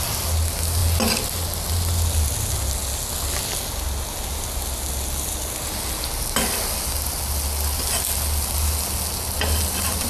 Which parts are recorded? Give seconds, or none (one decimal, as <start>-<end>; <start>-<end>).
0.0-10.1